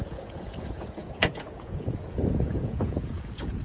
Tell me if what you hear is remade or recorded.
remade